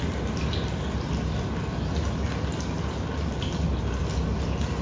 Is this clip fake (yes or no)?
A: no